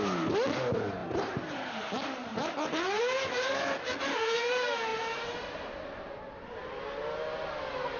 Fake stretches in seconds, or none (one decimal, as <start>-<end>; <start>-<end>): 1.0-3.0; 4.9-6.1